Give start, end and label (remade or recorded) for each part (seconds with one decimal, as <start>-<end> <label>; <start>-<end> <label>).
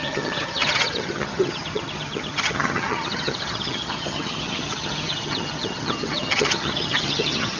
0.0-7.6 remade